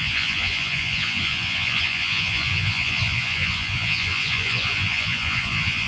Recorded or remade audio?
remade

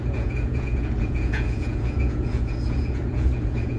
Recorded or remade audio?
remade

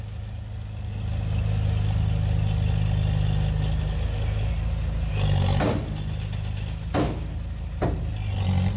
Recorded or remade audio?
recorded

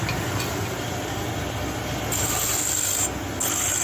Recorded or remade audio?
recorded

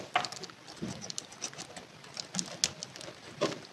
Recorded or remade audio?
recorded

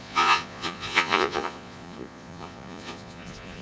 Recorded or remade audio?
remade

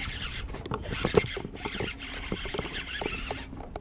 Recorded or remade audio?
recorded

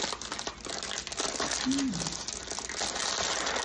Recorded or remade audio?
recorded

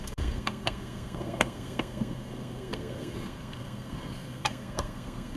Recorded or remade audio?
remade